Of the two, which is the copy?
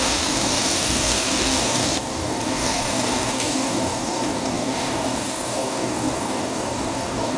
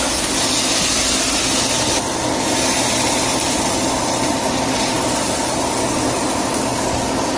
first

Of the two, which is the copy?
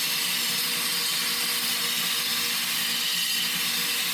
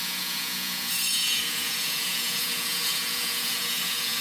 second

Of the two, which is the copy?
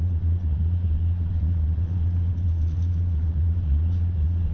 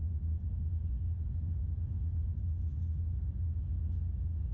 first